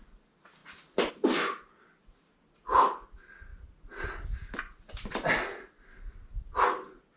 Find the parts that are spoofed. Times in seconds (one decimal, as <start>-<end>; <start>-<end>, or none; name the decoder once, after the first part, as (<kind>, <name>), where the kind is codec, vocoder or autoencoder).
none